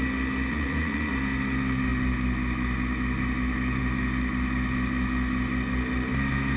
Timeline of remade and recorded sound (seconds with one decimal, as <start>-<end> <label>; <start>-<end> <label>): 0.0-0.5 recorded; 0.5-1.1 remade; 1.1-6.6 recorded